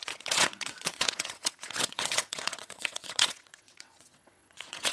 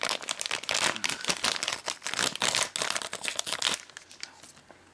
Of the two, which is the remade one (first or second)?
first